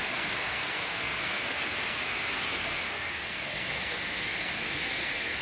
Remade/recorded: remade